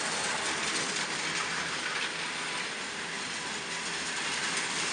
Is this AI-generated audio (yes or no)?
no